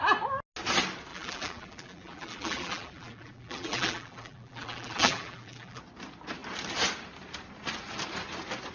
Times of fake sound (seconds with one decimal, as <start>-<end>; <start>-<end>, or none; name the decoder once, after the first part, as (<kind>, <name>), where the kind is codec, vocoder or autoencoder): 1.1-5.8 (vocoder, BigVGAN v2)